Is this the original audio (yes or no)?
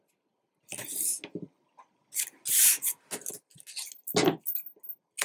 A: yes